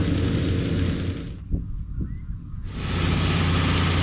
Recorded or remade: recorded